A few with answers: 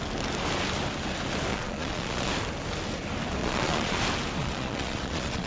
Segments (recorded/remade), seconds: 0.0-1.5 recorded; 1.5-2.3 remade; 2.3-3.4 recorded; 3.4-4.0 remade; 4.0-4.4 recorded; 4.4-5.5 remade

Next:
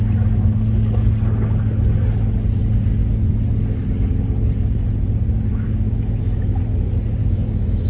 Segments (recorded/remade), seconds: 0.0-5.5 recorded; 5.5-6.4 remade; 6.4-7.2 recorded; 7.2-7.9 remade

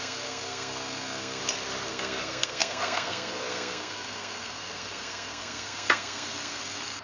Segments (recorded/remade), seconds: 0.0-1.4 remade; 1.4-1.9 recorded; 1.9-7.0 remade

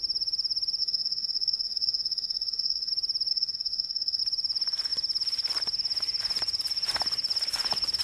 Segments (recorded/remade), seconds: 0.0-0.8 recorded; 0.8-2.9 remade; 2.9-3.3 recorded; 3.3-4.2 remade; 4.2-8.0 recorded

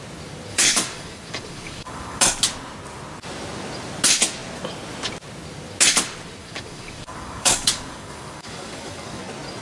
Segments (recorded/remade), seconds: 0.0-0.5 recorded; 0.5-2.2 remade; 2.2-6.4 recorded; 6.4-9.2 remade; 9.2-9.6 recorded

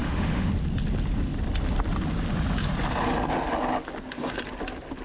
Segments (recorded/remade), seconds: 0.0-0.5 remade; 0.5-5.0 recorded

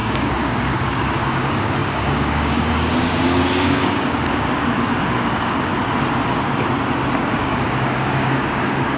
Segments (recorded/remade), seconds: 0.0-5.7 remade; 5.7-7.2 recorded; 7.2-9.0 remade

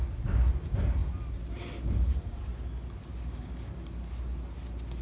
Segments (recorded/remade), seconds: 0.0-5.0 recorded